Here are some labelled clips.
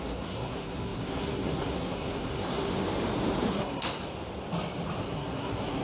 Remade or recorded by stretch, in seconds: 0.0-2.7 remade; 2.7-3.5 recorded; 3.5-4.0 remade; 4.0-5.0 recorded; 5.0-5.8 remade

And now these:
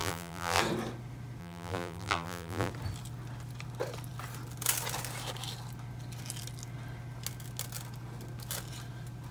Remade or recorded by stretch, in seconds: 0.0-0.6 remade; 0.6-1.4 recorded; 1.4-2.7 remade; 2.7-9.3 recorded

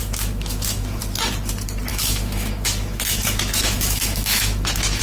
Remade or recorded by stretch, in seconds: 0.0-1.0 remade; 1.0-1.9 recorded; 1.9-5.0 remade

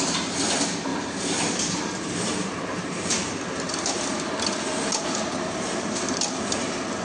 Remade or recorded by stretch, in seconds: 0.0-0.9 recorded; 0.9-4.0 remade; 4.0-7.0 recorded

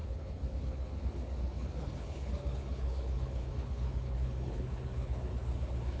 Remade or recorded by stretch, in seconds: 0.0-6.0 remade

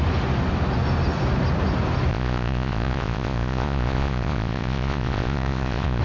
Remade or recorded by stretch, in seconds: 0.0-2.1 recorded; 2.1-6.0 remade

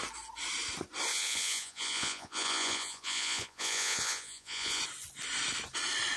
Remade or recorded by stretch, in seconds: 0.0-1.1 recorded; 1.1-4.8 remade; 4.8-6.2 recorded